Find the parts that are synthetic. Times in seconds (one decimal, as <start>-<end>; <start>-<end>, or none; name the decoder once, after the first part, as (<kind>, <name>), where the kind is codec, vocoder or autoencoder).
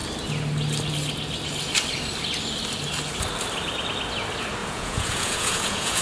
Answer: 4.6-6.0 (vocoder, Vocos)